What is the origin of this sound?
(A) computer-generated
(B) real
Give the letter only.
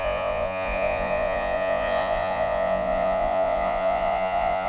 A